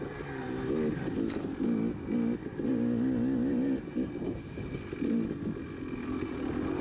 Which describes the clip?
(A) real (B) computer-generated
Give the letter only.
A